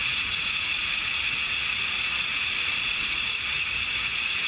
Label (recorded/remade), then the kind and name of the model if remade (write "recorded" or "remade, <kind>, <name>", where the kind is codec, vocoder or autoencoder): remade, vocoder, Vocos